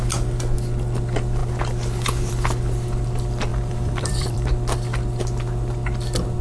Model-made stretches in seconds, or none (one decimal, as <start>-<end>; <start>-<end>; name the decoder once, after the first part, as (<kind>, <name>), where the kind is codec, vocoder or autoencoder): 3.5-4.5 (vocoder, BigVGAN v2)